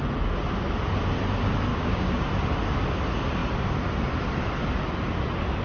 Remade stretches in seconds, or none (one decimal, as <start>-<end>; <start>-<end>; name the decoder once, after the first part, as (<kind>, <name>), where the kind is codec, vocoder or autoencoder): 1.7-2.3 (codec, DAC)